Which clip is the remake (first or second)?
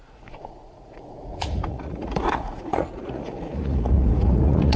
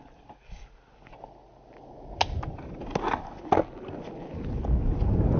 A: first